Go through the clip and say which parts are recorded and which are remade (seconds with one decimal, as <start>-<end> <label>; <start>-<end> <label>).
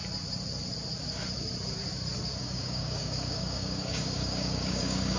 0.0-2.4 recorded; 2.4-5.2 remade